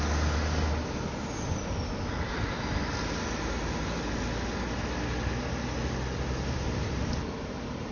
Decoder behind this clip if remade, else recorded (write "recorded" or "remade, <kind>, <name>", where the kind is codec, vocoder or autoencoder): recorded